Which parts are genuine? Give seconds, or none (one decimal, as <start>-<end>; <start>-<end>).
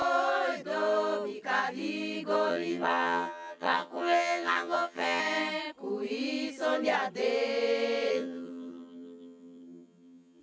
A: 0.0-2.5; 5.2-8.1